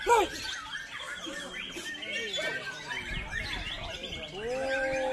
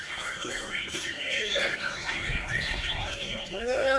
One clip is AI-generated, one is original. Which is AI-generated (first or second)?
second